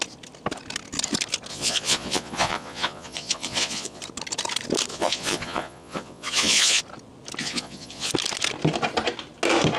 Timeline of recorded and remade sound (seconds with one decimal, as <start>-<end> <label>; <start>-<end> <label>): 0.0-1.5 recorded; 1.5-4.0 remade; 4.0-4.9 recorded; 4.9-6.8 remade; 6.8-7.4 recorded; 7.4-8.1 remade; 8.1-9.8 recorded